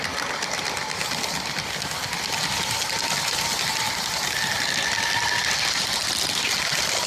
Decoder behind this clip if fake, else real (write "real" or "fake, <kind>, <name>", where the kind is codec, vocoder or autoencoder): real